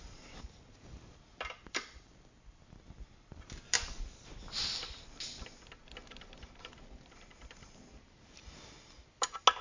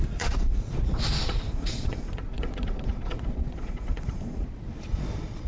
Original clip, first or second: first